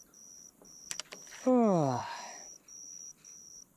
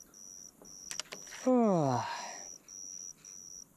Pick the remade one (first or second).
first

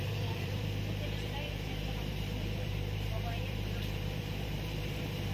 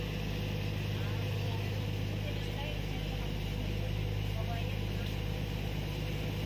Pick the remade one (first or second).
first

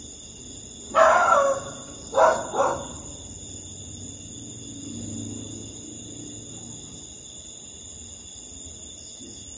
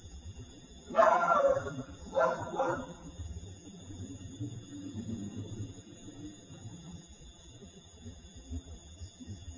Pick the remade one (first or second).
second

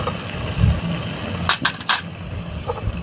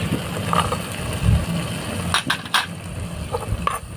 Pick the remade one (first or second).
first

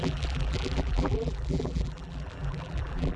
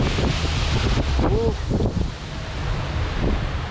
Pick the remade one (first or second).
first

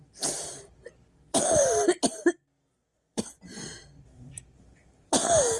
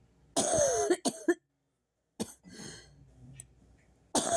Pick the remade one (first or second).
first